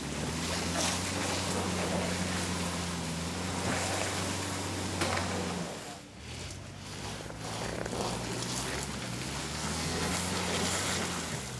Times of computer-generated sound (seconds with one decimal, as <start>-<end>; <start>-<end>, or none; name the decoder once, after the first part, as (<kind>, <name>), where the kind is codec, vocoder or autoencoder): 9.4-10.1 (codec, SNAC)